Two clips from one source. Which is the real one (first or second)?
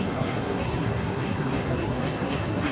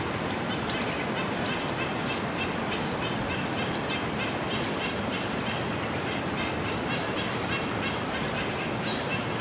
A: second